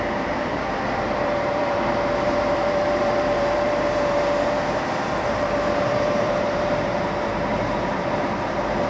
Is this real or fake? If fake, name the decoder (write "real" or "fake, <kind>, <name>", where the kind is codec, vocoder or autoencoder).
fake, vocoder, BigVGAN v2